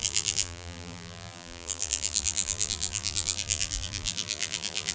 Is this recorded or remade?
remade